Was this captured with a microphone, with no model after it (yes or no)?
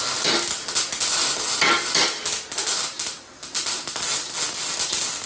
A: yes